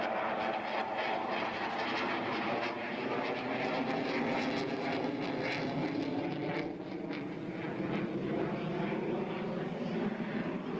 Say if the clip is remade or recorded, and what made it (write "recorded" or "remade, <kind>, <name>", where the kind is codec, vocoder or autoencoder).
recorded